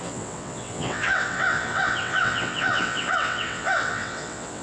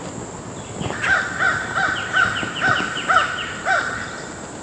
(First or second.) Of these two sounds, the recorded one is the second